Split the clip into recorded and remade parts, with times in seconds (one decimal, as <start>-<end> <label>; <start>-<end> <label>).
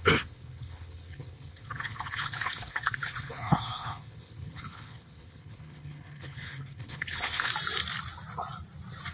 0.0-7.5 remade; 7.5-9.1 recorded